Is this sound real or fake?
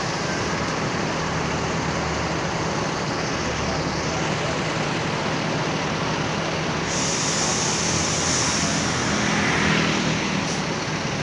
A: real